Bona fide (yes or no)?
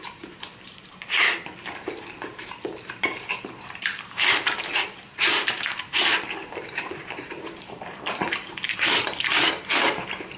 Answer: no